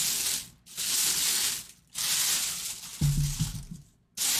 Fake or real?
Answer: real